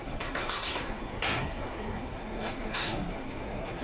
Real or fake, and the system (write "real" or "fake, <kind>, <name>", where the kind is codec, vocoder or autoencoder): fake, codec, SNAC